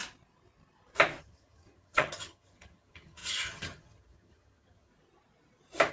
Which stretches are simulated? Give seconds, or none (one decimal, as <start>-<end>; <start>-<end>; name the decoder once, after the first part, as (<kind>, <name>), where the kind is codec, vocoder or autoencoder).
1.2-4.9 (vocoder, HiFi-GAN)